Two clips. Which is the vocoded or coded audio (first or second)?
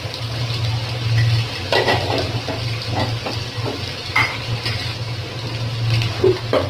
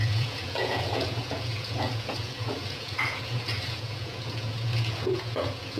second